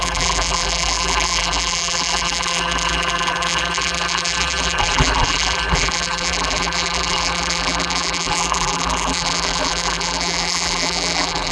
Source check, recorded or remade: remade